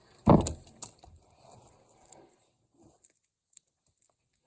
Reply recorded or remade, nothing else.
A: recorded